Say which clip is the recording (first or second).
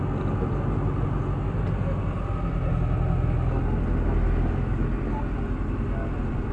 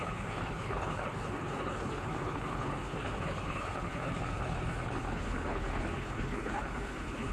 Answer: first